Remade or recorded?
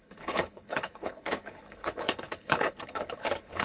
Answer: remade